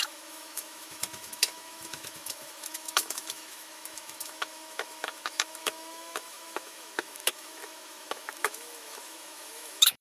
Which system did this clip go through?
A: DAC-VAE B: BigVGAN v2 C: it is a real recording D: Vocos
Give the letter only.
A